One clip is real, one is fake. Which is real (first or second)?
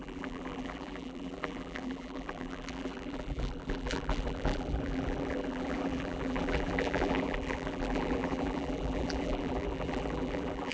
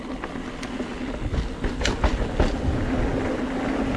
second